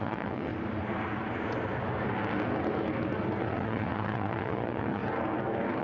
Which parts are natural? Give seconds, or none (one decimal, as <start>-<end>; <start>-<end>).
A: 0.5-3.4; 5.0-5.8